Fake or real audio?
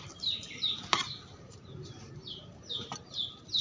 fake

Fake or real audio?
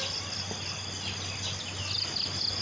real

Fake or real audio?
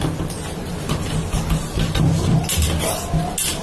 real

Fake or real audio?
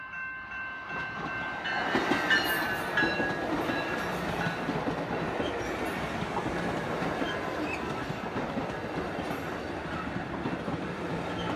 real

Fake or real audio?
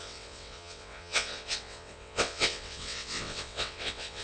fake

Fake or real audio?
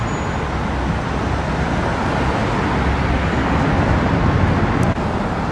real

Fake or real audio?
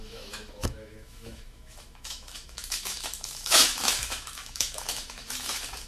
fake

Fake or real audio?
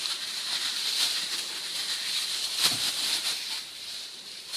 fake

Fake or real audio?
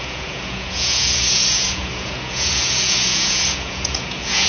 fake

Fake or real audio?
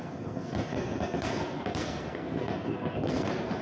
fake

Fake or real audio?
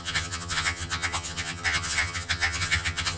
fake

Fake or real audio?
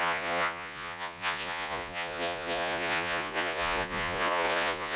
fake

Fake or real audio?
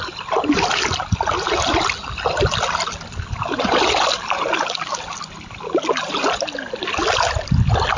real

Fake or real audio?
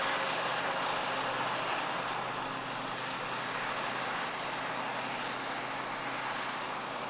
real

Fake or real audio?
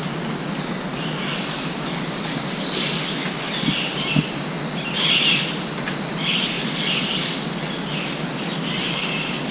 real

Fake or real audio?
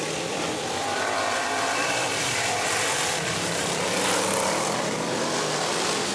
fake